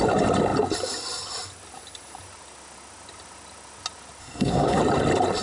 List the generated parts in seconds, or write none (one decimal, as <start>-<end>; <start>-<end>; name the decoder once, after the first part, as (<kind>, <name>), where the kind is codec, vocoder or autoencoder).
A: 4.2-4.8 (codec, SNAC)